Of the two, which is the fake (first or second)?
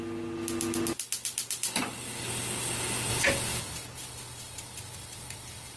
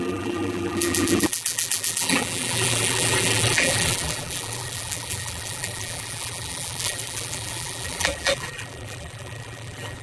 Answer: second